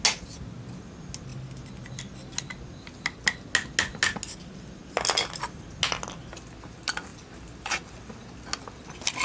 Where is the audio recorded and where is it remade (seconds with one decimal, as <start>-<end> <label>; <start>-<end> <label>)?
0.0-9.2 recorded